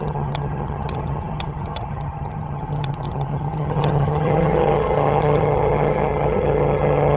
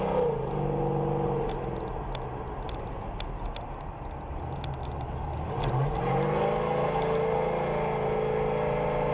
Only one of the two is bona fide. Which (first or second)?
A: second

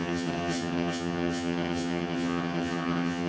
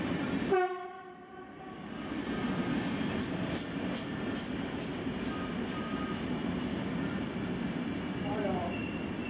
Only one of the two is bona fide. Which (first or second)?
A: second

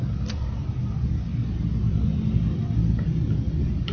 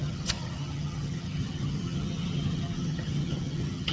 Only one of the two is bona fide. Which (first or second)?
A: first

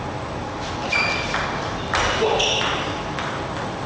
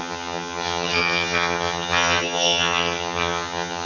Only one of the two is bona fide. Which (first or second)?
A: first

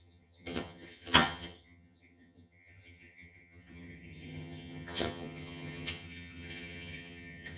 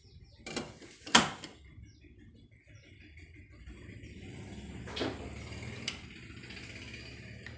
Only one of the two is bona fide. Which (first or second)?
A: second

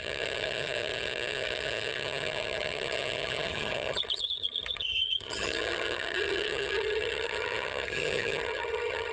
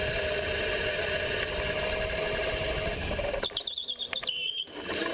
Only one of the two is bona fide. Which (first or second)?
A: second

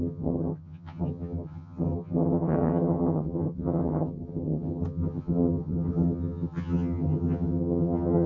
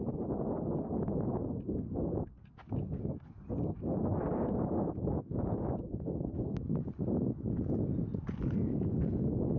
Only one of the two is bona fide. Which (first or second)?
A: second